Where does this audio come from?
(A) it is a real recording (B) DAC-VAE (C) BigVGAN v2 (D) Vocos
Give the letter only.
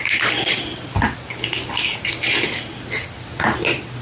A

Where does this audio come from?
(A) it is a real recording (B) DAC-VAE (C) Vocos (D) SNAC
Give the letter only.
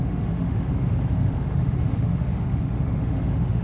B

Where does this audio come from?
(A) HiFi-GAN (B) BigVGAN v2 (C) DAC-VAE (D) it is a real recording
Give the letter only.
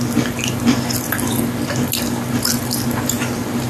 D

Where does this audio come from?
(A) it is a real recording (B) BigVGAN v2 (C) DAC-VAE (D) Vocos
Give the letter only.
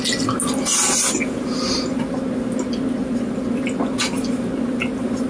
A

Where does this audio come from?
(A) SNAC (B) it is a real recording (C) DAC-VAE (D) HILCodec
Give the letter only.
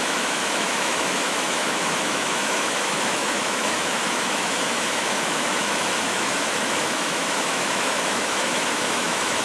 C